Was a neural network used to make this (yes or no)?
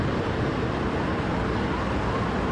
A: no